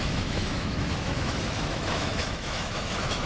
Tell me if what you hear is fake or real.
fake